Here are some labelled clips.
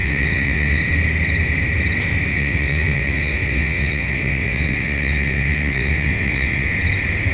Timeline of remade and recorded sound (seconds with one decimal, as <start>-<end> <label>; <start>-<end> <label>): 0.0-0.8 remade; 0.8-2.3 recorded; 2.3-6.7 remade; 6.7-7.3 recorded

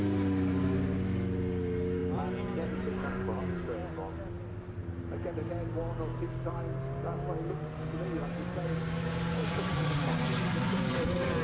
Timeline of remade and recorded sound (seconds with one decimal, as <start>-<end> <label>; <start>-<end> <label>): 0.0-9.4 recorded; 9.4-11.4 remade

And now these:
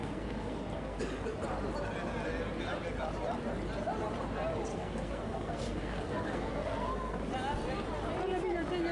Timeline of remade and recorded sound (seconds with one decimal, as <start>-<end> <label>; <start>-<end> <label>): 0.0-1.0 remade; 1.0-4.7 recorded; 4.7-7.2 remade; 7.2-8.9 recorded

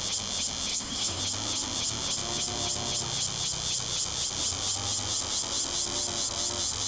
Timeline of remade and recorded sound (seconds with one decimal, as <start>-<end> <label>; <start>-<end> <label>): 0.0-0.7 recorded; 0.7-1.2 remade; 1.2-6.9 recorded

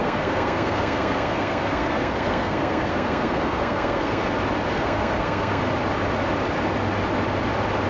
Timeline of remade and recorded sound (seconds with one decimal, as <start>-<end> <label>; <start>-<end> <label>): 0.0-4.2 remade; 4.2-4.7 recorded; 4.7-5.6 remade; 5.6-7.9 recorded

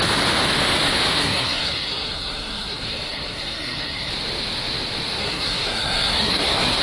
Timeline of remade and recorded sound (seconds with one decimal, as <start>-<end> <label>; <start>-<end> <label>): 0.0-1.2 recorded; 1.2-4.1 remade; 4.1-5.2 recorded; 5.2-6.8 remade

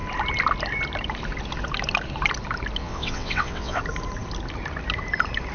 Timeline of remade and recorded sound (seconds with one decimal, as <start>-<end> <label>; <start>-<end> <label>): 0.0-2.8 recorded; 2.8-3.8 remade; 3.8-5.5 recorded